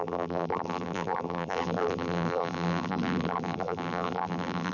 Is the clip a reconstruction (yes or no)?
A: yes